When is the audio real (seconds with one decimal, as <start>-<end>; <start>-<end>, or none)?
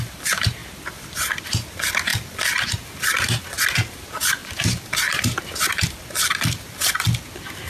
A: 0.0-4.4; 6.0-7.7